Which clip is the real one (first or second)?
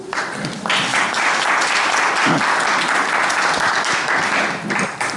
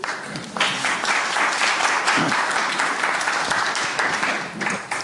first